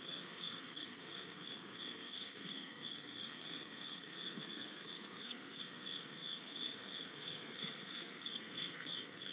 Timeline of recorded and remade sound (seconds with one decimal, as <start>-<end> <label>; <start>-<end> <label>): 0.0-9.3 remade